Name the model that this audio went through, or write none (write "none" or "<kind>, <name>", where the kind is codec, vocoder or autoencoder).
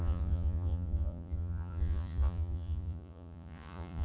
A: vocoder, Vocos